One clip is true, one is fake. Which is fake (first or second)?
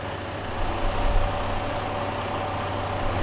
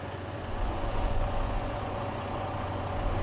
second